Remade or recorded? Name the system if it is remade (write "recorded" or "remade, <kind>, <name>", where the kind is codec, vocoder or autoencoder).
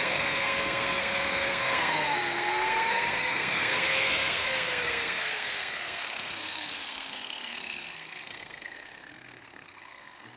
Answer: remade, codec, SNAC